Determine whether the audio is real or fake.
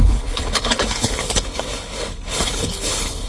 fake